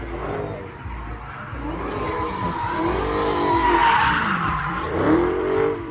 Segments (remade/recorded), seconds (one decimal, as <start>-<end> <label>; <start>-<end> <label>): 0.0-3.8 recorded; 3.8-5.9 remade